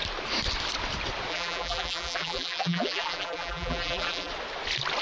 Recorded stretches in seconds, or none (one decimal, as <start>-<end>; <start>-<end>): 0.0-1.3; 4.3-5.0